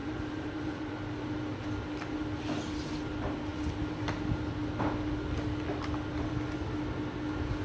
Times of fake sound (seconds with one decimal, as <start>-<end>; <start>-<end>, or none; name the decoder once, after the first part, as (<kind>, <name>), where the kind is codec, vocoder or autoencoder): 0.0-0.9 (vocoder, BigVGAN v2)

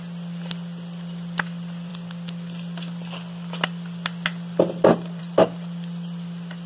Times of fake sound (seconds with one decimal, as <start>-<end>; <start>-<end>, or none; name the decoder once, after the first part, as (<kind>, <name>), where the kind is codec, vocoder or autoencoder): none

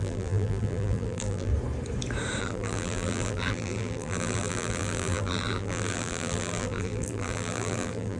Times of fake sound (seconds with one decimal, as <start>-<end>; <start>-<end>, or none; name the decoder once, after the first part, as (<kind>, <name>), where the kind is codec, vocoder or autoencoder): 0.0-1.5 (vocoder, BigVGAN v2); 2.4-8.2

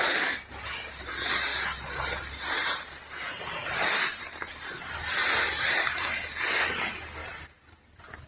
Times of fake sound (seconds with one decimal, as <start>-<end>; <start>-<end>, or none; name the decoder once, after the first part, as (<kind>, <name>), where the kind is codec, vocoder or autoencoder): 5.2-6.1 (vocoder, BigVGAN v2); 7.2-7.9

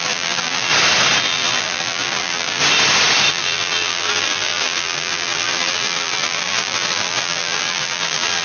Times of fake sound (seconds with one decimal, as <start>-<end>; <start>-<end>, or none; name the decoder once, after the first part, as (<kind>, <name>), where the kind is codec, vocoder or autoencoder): 0.0-0.7 (vocoder, BigVGAN v2); 1.2-2.6; 3.3-8.4